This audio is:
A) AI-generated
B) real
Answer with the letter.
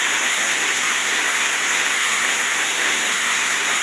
A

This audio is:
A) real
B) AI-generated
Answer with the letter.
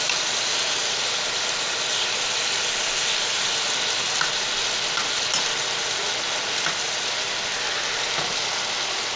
A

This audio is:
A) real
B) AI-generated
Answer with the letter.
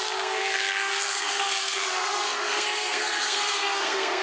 B